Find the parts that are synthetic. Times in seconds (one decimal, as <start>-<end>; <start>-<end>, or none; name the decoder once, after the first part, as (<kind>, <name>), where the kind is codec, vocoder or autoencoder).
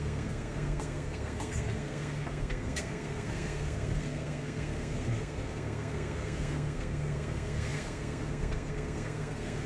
0.0-9.7 (codec, SNAC)